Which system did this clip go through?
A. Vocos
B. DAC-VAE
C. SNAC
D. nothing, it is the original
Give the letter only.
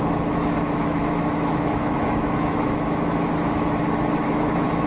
B